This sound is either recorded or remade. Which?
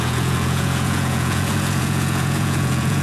remade